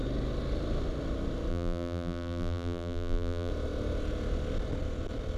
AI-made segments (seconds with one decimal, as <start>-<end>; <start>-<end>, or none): 1.5-3.5